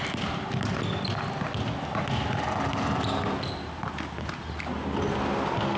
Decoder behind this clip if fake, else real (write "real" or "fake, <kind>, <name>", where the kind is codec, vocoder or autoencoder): real